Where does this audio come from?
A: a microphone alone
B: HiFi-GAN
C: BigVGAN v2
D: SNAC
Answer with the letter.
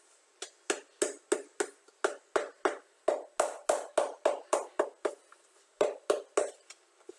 A